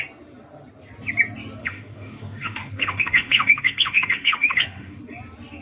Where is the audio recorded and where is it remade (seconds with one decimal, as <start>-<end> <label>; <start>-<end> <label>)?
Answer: 0.0-1.6 recorded; 1.6-5.0 remade; 5.0-5.6 recorded